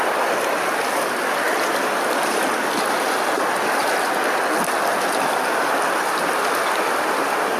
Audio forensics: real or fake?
real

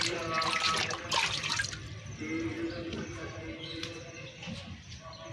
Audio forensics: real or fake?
real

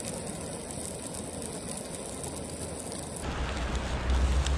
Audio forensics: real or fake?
real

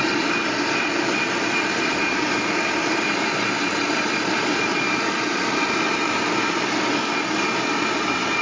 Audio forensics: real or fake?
real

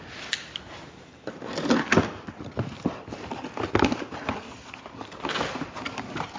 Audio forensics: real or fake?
real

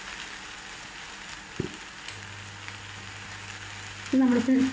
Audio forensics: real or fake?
real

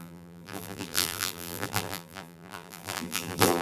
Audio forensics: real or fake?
fake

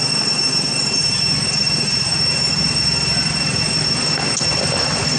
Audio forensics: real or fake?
real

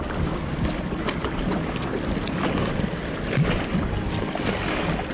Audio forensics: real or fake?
real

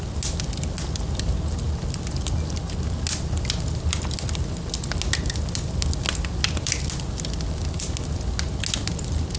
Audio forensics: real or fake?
real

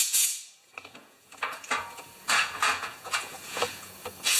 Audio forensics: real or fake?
fake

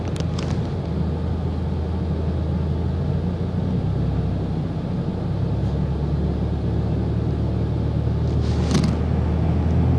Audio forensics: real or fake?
real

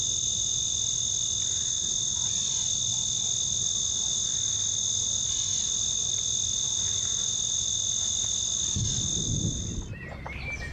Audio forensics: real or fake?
fake